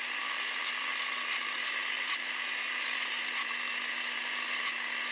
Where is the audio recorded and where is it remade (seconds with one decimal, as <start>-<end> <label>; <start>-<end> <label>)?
0.0-5.1 recorded